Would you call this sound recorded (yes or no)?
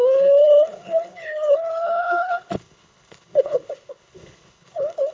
no